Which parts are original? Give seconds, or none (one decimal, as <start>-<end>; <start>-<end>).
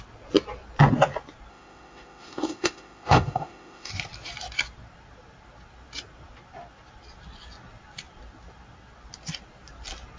0.0-1.5; 3.9-10.2